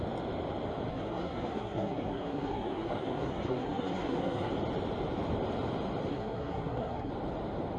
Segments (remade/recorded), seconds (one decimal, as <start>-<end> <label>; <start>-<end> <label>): 0.0-0.9 recorded; 0.9-4.5 remade; 4.5-6.1 recorded; 6.1-7.1 remade; 7.1-7.8 recorded